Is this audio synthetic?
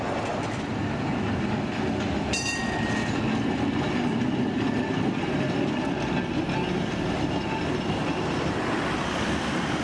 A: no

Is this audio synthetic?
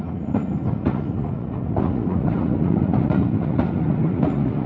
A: yes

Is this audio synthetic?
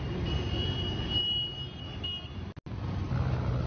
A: no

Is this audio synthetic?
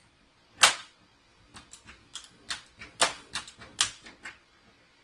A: no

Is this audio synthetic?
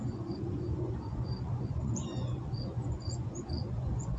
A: yes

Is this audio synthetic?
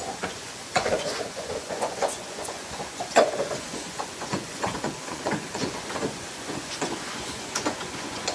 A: yes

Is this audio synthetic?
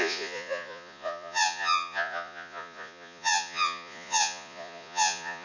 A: yes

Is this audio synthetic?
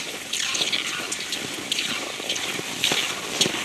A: no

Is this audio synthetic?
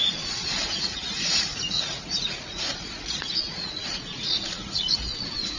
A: yes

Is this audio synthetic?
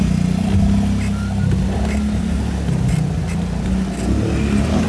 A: no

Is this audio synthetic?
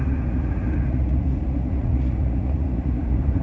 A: yes